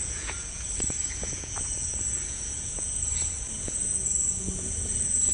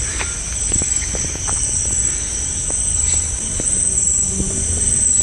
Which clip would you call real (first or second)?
second